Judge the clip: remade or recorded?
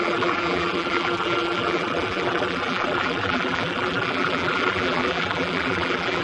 remade